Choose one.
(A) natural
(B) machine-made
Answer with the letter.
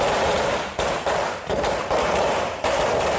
A